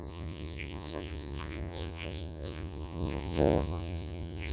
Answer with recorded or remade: remade